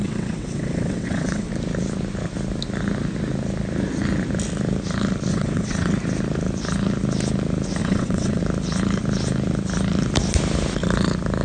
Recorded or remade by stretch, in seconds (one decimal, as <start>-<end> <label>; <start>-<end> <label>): 0.0-1.5 remade; 1.5-5.3 recorded; 5.3-5.9 remade; 5.9-7.8 recorded; 7.8-8.4 remade; 8.4-11.4 recorded